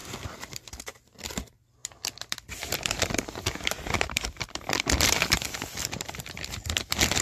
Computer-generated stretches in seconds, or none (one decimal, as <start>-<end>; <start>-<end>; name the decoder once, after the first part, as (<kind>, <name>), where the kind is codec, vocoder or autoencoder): 0.0-0.8 (vocoder, BigVGAN v2); 1.8-6.1